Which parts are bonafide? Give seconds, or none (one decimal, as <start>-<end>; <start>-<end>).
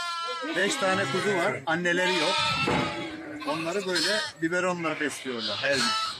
0.0-4.9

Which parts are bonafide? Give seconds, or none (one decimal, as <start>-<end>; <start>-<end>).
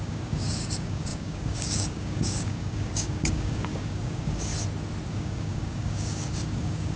4.5-5.1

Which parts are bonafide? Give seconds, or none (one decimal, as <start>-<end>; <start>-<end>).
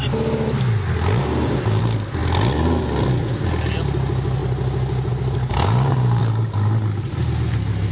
0.0-1.2; 1.8-5.5; 6.2-7.9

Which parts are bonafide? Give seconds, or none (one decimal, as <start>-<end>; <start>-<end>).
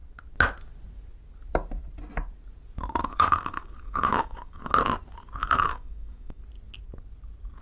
0.0-3.0; 4.7-5.4; 6.4-7.6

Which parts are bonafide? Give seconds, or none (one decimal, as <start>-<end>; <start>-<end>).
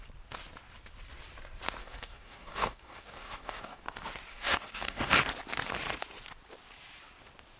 0.0-1.8; 3.8-4.3; 5.1-7.6